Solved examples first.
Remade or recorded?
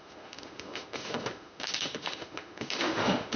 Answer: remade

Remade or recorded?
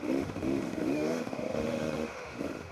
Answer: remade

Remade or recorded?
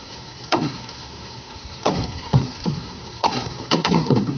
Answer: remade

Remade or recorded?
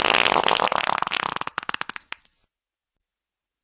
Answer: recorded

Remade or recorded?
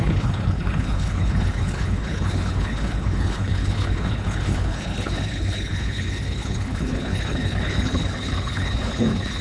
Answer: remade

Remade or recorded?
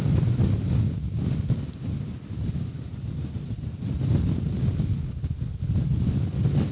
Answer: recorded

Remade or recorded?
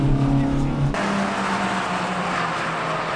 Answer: recorded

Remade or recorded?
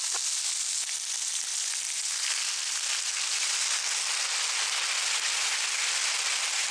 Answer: recorded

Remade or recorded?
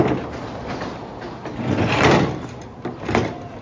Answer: recorded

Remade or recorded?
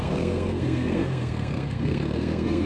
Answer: remade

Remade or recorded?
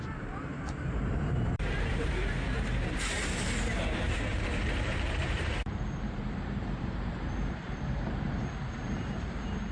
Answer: remade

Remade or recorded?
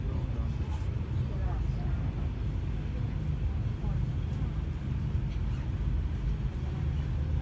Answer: recorded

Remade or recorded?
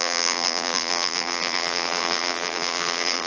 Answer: remade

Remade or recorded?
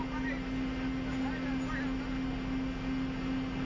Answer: recorded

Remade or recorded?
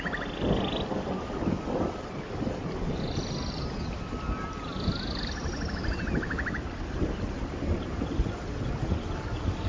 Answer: recorded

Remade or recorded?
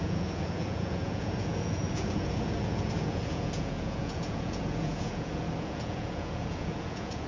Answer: remade